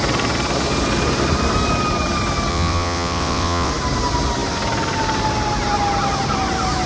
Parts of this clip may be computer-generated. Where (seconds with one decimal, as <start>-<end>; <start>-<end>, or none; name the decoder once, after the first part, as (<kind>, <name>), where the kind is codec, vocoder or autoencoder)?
2.5-3.7 (vocoder, WaveNeXt)